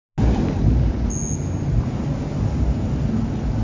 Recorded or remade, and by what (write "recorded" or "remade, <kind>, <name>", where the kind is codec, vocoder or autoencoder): recorded